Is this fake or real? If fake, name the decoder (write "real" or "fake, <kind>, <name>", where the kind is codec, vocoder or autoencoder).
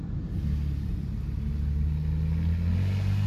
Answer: real